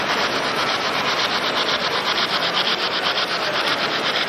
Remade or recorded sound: remade